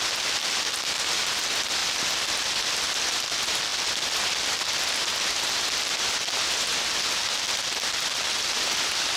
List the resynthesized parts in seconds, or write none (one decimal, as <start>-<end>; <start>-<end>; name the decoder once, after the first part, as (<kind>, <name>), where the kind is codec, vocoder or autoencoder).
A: none